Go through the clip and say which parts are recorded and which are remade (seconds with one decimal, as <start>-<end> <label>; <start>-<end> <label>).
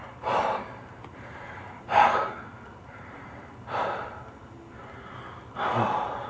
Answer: 0.0-3.8 remade; 3.8-6.3 recorded